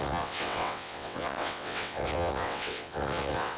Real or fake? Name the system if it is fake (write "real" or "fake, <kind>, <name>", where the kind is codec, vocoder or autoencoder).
fake, vocoder, WaveNeXt